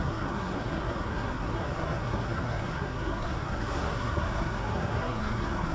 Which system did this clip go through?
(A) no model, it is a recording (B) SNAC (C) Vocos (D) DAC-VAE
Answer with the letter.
B